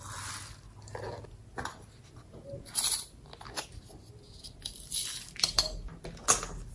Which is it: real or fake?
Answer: real